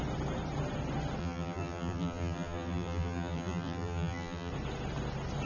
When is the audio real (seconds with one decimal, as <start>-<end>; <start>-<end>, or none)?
0.0-1.2; 4.5-5.5